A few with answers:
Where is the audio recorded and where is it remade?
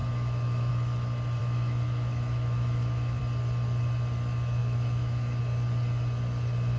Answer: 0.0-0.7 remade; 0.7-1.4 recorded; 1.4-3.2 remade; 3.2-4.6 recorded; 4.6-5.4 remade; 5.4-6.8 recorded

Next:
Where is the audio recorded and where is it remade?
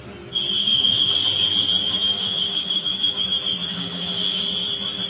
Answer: 0.0-0.6 recorded; 0.6-1.1 remade; 1.1-1.8 recorded; 1.8-3.2 remade; 3.2-3.7 recorded; 3.7-4.4 remade; 4.4-5.1 recorded